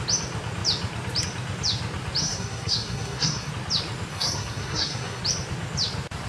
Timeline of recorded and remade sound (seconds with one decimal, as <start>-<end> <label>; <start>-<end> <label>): 0.0-2.2 recorded; 2.2-3.5 remade; 3.5-4.1 recorded; 4.1-5.2 remade; 5.2-6.3 recorded